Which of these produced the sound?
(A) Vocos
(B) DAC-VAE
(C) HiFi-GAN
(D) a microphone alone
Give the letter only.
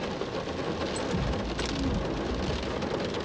D